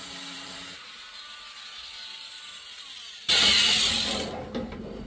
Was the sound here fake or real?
fake